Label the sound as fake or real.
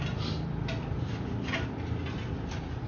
real